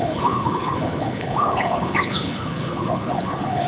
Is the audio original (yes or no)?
no